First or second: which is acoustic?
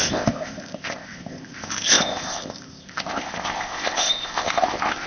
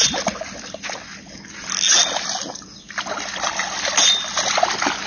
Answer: second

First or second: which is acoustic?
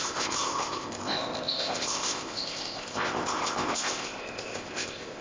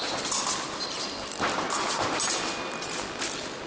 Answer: second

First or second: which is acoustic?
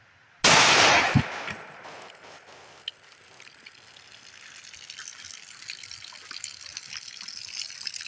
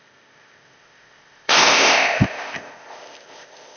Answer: first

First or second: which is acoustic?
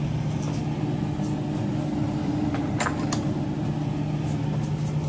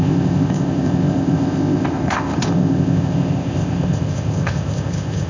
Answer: first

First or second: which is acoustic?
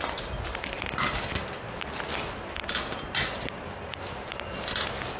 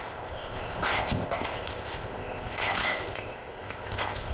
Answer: first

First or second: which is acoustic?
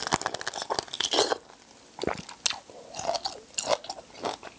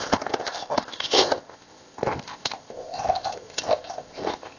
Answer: first